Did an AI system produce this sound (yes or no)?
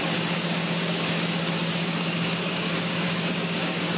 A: yes